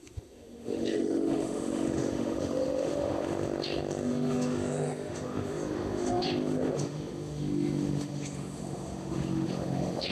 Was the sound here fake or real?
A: fake